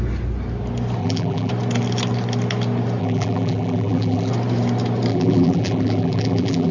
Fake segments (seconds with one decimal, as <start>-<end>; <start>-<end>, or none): 1.0-1.5; 3.0-4.3; 5.1-6.7